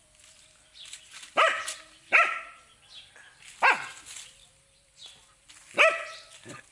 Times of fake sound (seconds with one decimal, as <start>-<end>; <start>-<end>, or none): none